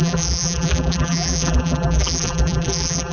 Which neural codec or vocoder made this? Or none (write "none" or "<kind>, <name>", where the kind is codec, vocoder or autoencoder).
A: vocoder, BigVGAN v2